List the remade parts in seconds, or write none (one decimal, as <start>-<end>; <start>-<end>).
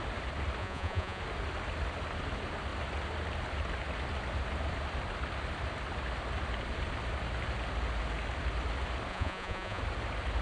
0.6-1.2; 9.1-9.8